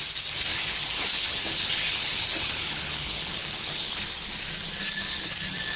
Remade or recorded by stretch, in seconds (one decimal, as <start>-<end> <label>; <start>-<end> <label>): 0.0-0.5 recorded; 0.5-4.0 remade; 4.0-5.8 recorded